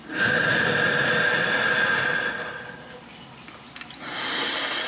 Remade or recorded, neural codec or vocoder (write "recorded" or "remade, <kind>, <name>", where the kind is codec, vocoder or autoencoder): recorded